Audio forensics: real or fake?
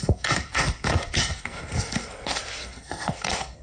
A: fake